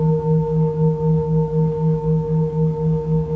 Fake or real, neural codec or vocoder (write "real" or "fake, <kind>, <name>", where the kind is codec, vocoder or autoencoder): fake, codec, DAC